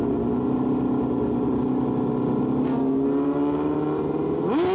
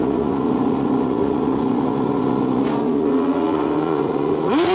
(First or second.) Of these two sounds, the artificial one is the second